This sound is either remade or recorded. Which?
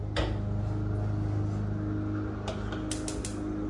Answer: recorded